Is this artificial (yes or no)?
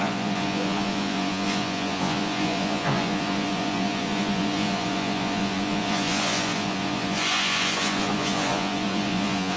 yes